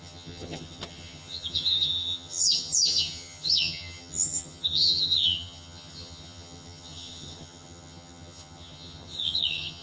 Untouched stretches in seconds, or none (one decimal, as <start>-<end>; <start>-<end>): none